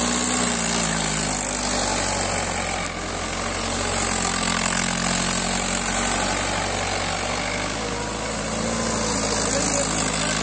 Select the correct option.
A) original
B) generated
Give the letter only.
A